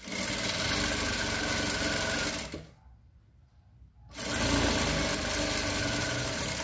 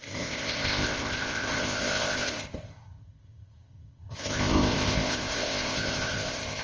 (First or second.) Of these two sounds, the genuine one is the first